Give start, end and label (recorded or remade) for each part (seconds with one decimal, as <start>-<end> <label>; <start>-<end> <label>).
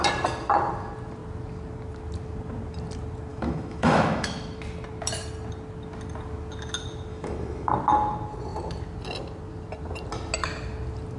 0.0-3.3 recorded; 3.3-4.6 remade; 4.6-7.1 recorded; 7.1-7.7 remade; 7.7-11.2 recorded